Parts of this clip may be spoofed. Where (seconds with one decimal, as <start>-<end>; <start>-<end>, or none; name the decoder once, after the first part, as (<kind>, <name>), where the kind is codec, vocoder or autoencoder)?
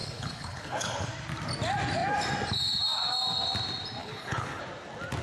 0.0-1.1 (codec, HILCodec); 4.0-4.6